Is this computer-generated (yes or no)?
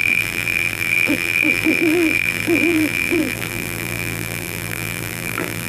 yes